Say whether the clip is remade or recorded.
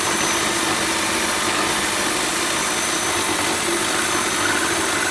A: recorded